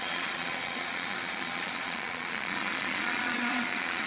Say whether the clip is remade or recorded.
remade